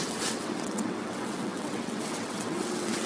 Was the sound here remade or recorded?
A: remade